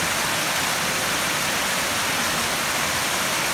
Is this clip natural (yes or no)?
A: yes